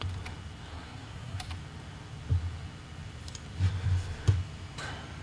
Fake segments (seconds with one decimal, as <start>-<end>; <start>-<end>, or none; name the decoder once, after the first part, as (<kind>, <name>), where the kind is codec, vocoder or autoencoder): 0.7-1.4 (codec, SNAC)